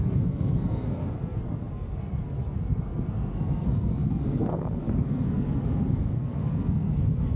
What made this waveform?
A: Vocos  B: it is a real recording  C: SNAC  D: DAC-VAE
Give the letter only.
C